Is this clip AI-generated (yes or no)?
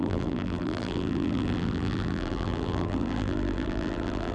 yes